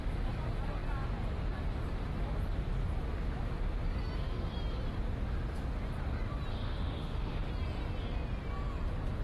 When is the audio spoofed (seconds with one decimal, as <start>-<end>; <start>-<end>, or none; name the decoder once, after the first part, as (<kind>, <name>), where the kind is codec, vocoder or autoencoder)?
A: 6.5-7.5 (autoencoder, DAC-VAE)